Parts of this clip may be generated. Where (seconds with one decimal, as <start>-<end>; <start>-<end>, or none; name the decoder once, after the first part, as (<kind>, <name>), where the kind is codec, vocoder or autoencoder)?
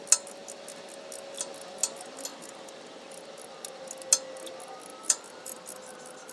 2.3-3.2 (vocoder, BigVGAN v2); 4.9-6.3